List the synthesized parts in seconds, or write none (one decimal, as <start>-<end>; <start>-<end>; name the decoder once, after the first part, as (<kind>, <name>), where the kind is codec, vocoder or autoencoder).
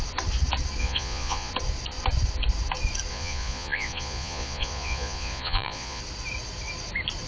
0.8-1.5 (vocoder, Vocos); 3.1-6.0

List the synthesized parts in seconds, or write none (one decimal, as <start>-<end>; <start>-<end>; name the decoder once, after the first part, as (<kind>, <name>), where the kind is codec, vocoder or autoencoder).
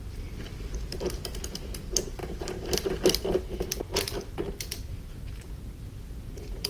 none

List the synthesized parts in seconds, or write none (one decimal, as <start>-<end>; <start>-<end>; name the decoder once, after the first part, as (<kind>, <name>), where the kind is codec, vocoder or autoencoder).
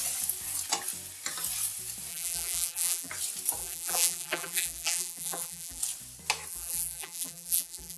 2.1-3.1 (vocoder, BigVGAN v2); 3.6-5.8; 6.5-8.0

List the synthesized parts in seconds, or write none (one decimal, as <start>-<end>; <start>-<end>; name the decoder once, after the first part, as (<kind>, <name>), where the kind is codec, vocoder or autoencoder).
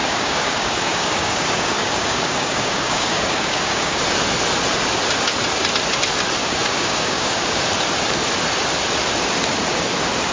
0.0-4.0 (codec, DAC); 6.4-7.6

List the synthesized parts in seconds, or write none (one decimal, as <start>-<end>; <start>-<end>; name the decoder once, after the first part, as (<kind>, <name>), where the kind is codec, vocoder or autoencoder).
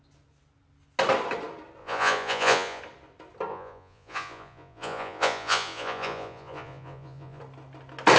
1.8-2.8 (vocoder, Vocos); 3.5-7.4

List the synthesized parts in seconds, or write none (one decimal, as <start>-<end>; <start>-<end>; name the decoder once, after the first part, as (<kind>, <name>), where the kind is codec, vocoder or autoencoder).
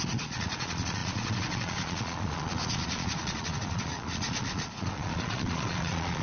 0.0-6.2 (vocoder, Vocos)